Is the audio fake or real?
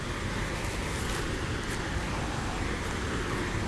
real